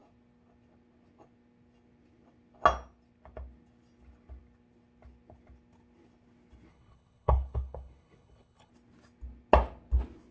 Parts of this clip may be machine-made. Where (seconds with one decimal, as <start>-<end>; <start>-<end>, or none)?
6.7-8.7